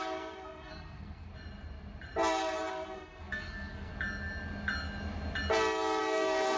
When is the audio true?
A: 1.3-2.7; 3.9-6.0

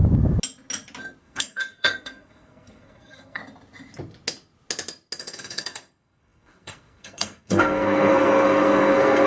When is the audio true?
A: 0.0-1.2; 3.4-5.2

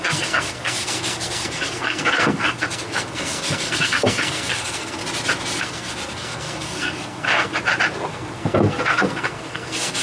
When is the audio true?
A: 5.0-5.6; 7.5-8.1

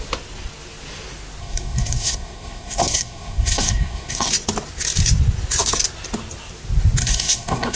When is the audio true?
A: 0.0-1.4; 4.3-7.0

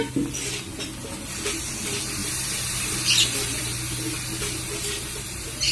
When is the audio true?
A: 0.0-5.7